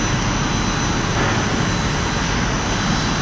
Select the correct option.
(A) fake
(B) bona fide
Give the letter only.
B